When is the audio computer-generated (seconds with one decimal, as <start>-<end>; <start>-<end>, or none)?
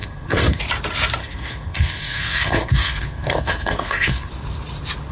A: 0.0-0.6; 1.2-4.3